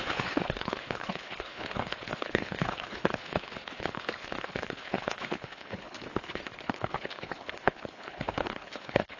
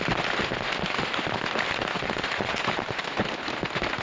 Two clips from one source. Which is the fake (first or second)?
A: first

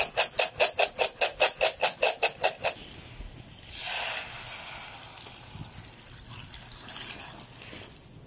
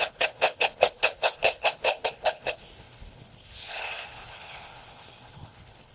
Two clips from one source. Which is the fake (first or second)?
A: second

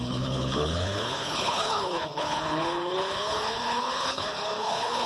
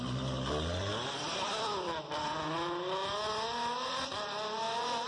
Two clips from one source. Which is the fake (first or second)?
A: first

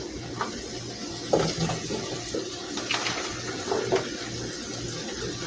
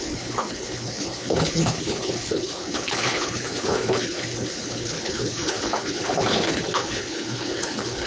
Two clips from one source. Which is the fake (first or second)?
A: second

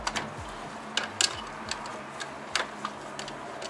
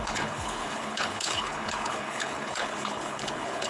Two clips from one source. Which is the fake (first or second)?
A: second